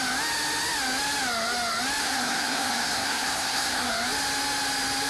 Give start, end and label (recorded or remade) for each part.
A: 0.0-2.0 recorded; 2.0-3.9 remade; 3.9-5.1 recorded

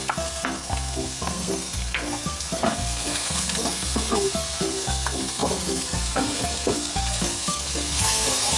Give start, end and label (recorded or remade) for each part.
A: 0.0-8.6 remade

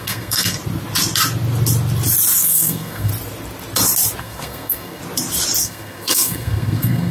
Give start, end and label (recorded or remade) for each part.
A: 0.0-0.6 remade; 0.6-2.4 recorded; 2.4-3.1 remade; 3.1-4.2 recorded; 4.2-5.0 remade; 5.0-5.6 recorded; 5.6-7.1 remade

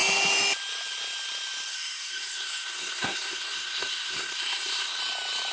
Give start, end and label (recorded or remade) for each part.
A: 0.0-1.7 recorded; 1.7-5.0 remade; 5.0-5.5 recorded